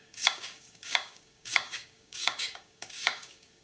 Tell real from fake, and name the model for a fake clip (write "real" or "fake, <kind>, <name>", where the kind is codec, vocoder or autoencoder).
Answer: fake, codec, DAC